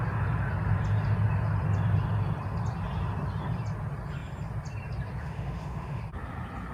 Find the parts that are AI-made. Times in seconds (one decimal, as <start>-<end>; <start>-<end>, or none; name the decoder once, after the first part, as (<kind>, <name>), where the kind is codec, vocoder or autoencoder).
5.2-6.0 (autoencoder, DAC-VAE)